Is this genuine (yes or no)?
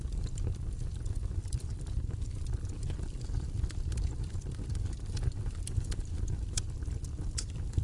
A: no